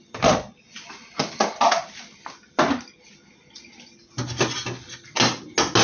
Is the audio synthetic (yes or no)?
no